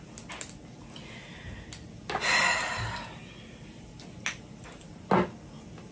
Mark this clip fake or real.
real